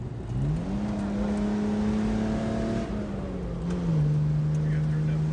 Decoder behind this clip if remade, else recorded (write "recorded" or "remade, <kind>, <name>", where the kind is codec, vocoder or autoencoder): recorded